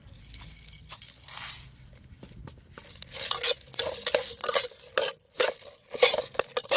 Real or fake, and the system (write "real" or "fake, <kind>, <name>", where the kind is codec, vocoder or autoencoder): real